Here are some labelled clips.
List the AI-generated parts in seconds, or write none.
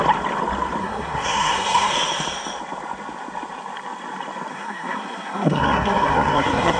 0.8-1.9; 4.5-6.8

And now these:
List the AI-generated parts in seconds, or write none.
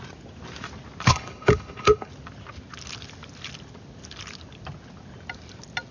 1.1-2.1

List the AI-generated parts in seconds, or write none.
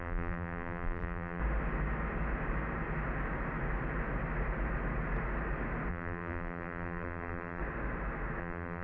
0.0-1.4; 5.9-7.6; 8.4-8.8